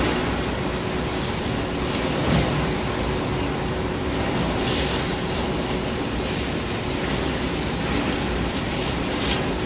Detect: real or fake real